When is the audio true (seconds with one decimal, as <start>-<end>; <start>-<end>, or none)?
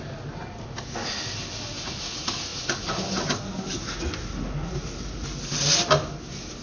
0.0-6.6